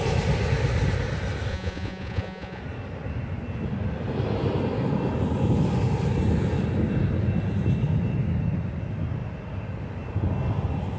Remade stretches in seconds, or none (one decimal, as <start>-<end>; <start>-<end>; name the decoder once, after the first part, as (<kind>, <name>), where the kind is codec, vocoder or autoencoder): 1.5-2.6 (vocoder, Vocos)